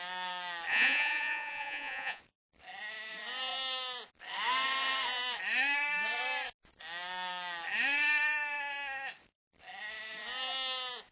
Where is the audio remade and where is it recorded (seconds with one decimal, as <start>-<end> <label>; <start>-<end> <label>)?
0.0-0.7 recorded; 0.7-2.2 remade; 2.2-11.1 recorded